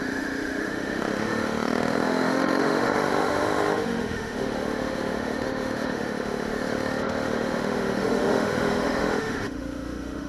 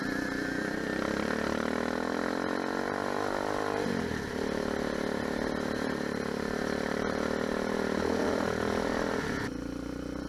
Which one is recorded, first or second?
second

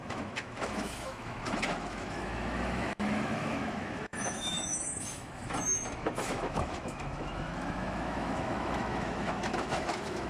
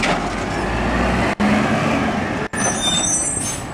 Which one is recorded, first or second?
second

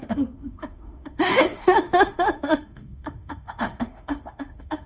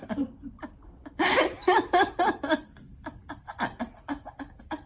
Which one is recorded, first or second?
second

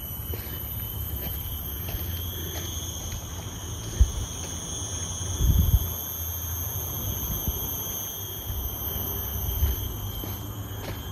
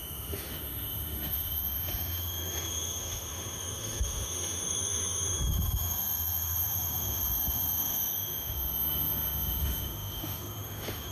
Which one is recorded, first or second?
first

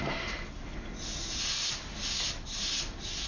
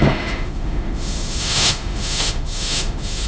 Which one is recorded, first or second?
first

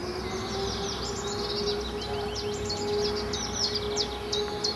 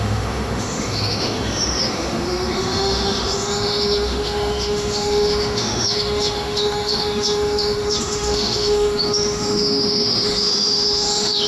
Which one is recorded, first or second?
first